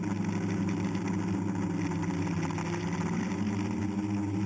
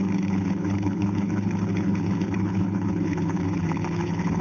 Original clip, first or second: first